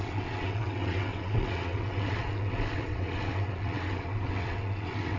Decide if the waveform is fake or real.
fake